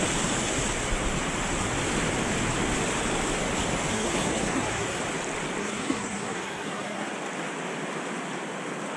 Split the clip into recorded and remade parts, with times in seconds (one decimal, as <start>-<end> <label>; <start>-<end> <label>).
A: 0.0-3.9 recorded; 3.9-5.0 remade; 5.0-5.6 recorded; 5.6-7.1 remade; 7.1-9.0 recorded